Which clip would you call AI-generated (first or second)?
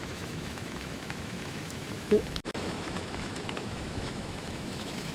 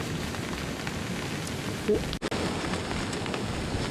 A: first